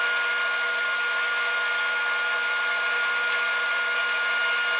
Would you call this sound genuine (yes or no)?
yes